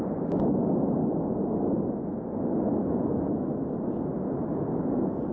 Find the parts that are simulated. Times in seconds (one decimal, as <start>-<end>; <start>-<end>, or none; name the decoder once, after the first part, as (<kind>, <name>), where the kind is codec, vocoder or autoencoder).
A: none